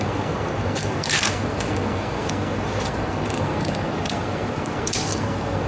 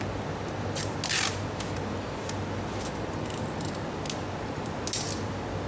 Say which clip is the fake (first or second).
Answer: first